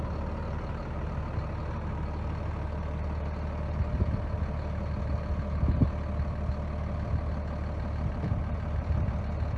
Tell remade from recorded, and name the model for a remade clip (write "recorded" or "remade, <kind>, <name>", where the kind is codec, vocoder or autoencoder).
recorded